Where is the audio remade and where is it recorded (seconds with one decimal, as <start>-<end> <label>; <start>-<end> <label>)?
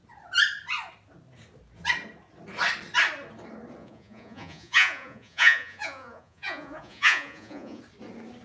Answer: 0.0-3.8 recorded; 3.8-7.8 remade; 7.8-8.4 recorded